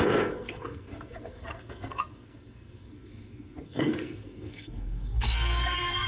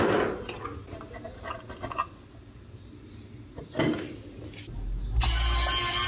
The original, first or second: second